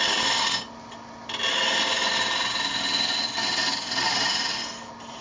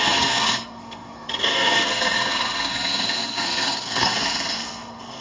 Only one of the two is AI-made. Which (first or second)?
second